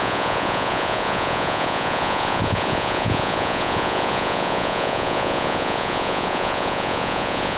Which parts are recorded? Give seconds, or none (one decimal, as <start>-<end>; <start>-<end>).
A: none